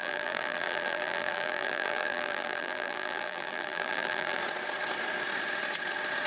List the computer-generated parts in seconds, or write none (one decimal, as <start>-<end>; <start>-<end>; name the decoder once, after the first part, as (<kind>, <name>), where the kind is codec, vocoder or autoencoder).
0.0-4.4 (vocoder, BigVGAN v2)